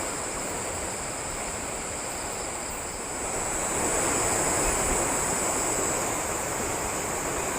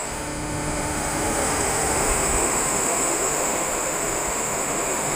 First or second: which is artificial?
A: second